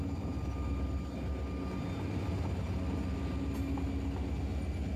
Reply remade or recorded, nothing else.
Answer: recorded